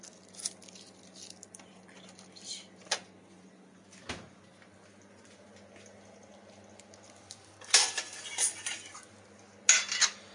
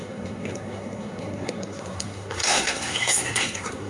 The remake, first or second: second